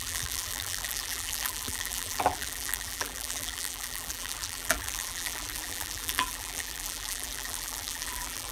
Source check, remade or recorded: remade